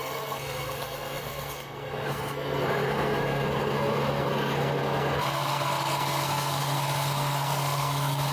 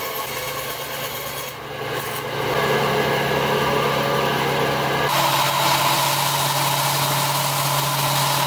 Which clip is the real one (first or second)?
second